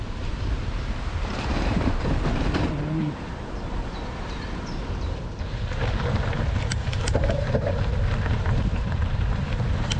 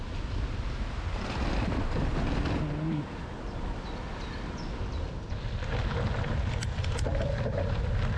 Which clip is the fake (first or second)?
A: first